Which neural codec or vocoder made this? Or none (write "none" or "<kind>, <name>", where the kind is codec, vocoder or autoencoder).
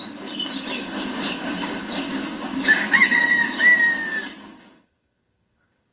codec, DAC